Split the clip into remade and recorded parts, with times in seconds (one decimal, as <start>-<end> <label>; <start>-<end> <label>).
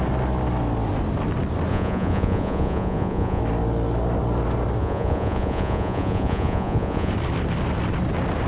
0.0-1.7 recorded; 1.7-3.4 remade; 3.4-4.8 recorded; 4.8-7.1 remade; 7.1-8.5 recorded